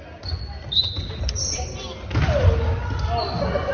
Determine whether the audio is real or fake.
real